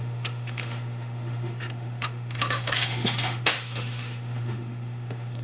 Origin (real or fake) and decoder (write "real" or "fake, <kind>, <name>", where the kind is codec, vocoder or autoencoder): fake, autoencoder, DAC-VAE